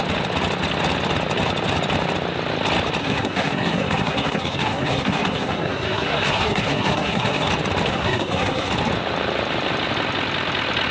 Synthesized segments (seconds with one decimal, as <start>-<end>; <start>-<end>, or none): 3.0-7.5; 7.9-8.7